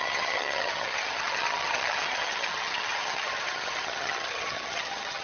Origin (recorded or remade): remade